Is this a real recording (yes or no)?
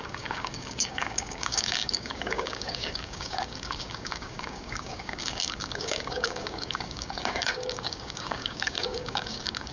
no